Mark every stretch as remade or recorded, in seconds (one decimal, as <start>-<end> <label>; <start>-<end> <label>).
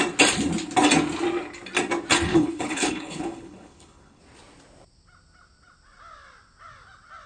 0.0-2.3 recorded; 2.3-4.2 remade; 4.2-7.3 recorded